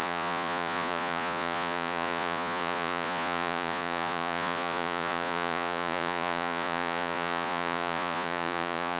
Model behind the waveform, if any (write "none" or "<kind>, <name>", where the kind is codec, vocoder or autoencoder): vocoder, Vocos